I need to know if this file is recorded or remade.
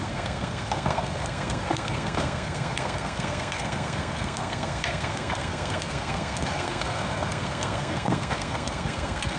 remade